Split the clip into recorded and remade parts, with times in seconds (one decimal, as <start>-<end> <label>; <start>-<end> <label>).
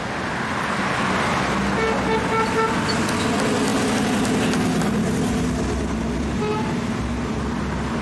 0.0-8.0 recorded